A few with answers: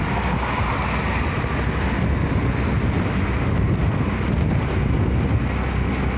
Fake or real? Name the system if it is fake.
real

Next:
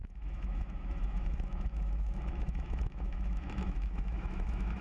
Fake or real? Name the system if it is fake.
fake, autoencoder, DAC-VAE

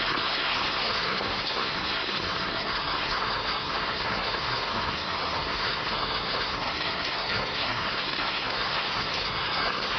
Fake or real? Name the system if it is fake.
fake, codec, SNAC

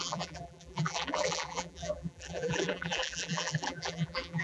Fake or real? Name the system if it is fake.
fake, vocoder, BigVGAN v2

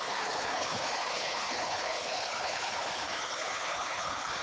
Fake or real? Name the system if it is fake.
fake, codec, HILCodec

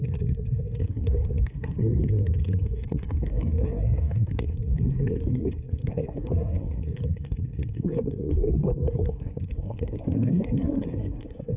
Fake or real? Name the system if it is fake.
fake, codec, SNAC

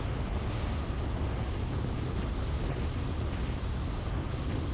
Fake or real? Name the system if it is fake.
real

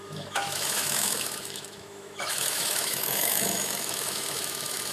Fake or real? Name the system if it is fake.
fake, autoencoder, DAC-VAE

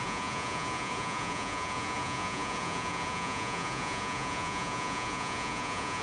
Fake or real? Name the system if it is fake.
fake, vocoder, Vocos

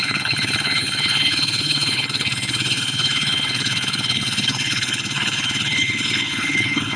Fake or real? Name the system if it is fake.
fake, codec, HILCodec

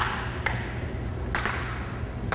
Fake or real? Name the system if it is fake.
real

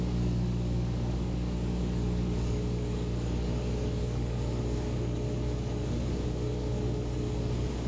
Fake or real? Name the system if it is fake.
fake, codec, DAC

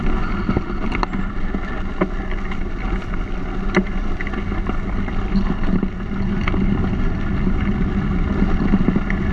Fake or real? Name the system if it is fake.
real